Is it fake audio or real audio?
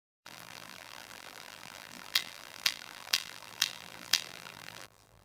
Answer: fake